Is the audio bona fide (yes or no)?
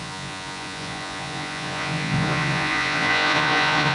no